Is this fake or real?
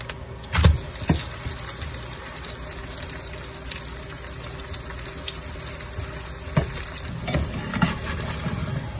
real